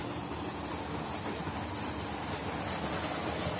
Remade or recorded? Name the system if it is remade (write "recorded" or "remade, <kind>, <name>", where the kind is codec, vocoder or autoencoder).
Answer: recorded